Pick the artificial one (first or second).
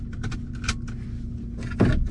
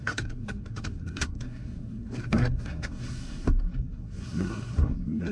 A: second